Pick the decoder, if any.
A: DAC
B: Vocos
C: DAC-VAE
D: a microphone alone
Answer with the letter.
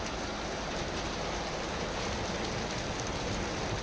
D